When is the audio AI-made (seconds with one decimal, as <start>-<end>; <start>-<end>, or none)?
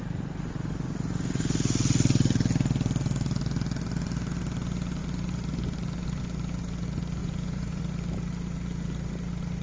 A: 7.2-7.8